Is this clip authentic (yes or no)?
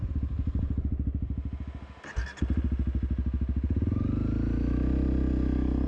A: yes